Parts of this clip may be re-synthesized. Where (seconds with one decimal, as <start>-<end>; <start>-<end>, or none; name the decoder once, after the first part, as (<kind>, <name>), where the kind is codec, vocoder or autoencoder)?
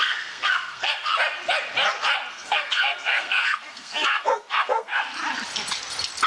0.0-1.1 (codec, SNAC); 2.3-4.9